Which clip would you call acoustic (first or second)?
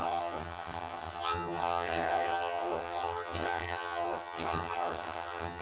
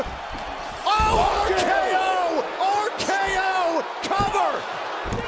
second